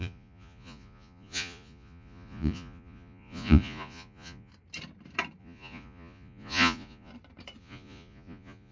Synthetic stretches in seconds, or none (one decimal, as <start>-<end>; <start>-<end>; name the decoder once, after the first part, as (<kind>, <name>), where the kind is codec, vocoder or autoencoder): 0.0-4.5 (vocoder, Vocos); 5.4-7.1; 7.6-8.7